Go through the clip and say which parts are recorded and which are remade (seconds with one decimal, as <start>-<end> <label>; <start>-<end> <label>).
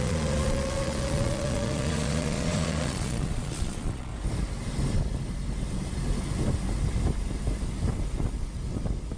0.0-4.1 remade; 4.1-9.2 recorded